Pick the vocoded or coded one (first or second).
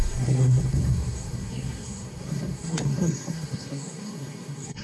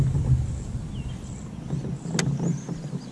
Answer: first